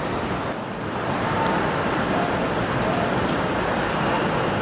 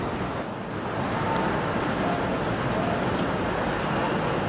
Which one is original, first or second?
second